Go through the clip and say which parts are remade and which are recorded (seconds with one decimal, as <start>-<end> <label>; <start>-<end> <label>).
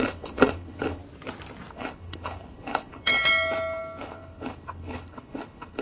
0.0-1.0 remade; 1.0-1.7 recorded; 1.7-3.1 remade; 3.1-4.0 recorded; 4.0-5.8 remade